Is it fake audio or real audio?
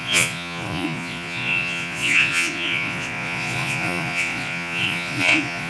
fake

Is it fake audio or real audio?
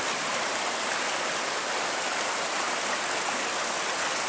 real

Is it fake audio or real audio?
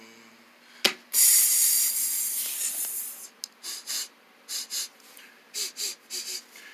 real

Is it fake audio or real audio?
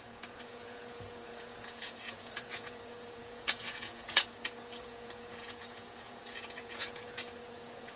fake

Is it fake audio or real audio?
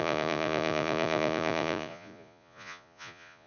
fake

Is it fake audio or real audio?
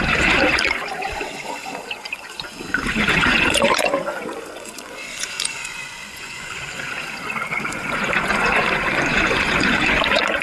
fake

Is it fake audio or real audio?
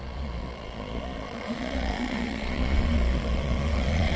fake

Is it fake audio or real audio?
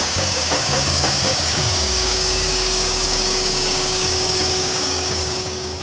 fake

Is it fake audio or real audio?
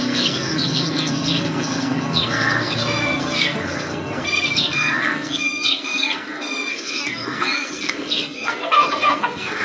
fake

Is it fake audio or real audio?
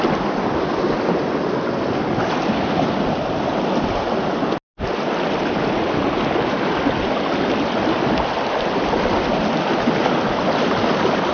real